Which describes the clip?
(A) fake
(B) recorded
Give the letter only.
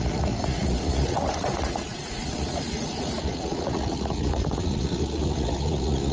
A